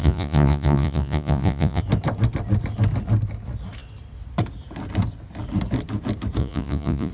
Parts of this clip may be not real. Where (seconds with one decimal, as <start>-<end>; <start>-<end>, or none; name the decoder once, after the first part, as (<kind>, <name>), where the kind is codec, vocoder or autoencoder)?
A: 0.0-1.8 (vocoder, Vocos); 6.4-7.1